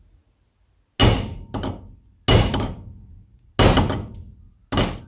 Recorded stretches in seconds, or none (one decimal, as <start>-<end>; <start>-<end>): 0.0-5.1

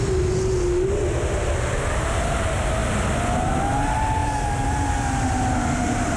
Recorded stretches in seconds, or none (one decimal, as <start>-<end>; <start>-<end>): 0.0-6.2

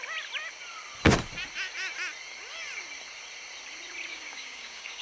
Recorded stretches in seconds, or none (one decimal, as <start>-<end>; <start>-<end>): 0.0-4.1

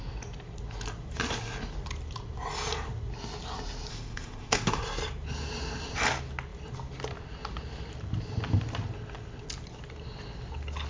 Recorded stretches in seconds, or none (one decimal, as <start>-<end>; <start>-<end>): 0.0-3.9; 4.8-10.9

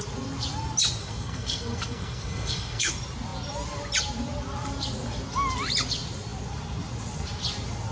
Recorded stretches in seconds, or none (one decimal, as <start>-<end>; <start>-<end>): 0.0-1.0; 2.9-7.9